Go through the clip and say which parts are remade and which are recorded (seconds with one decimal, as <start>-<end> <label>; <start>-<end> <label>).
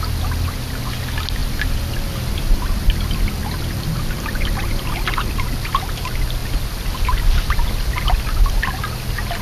0.0-1.4 recorded; 1.4-1.9 remade; 1.9-3.4 recorded; 3.4-4.9 remade; 4.9-9.4 recorded